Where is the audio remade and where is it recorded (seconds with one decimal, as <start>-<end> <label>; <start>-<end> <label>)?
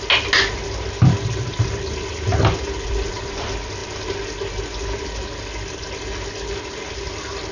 0.0-7.5 recorded